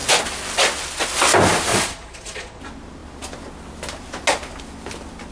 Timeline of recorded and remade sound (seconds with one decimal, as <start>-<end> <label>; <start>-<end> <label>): 0.0-1.7 recorded; 1.7-2.6 remade; 2.6-5.3 recorded